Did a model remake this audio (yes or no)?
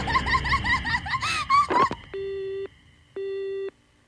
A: no